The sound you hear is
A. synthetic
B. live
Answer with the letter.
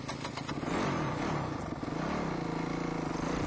B